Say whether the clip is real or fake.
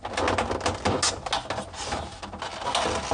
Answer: real